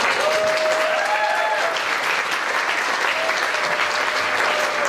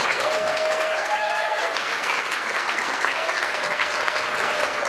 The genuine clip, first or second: first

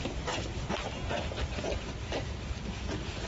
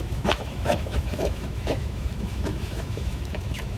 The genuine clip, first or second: first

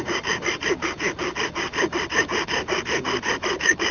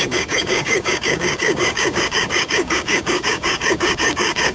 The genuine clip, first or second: first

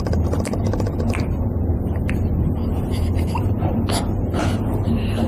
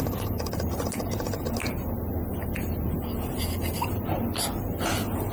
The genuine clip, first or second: second